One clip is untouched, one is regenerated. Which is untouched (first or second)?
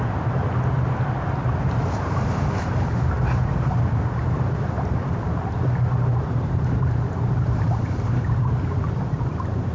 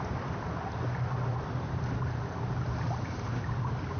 second